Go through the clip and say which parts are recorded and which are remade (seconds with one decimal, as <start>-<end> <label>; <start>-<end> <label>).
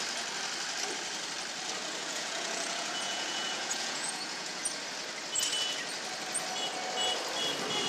0.0-2.0 recorded; 2.0-4.7 remade; 4.7-7.9 recorded